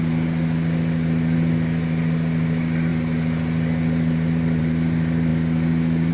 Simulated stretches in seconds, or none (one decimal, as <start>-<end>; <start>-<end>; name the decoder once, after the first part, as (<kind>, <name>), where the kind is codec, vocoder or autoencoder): none